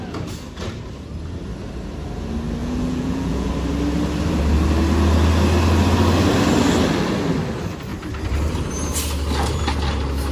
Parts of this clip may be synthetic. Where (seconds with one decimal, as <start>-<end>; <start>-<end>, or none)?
2.6-3.5